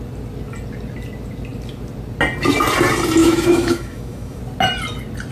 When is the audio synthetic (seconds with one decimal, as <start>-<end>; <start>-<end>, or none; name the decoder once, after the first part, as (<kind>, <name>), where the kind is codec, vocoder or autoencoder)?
3.2-4.4 (autoencoder, DAC-VAE)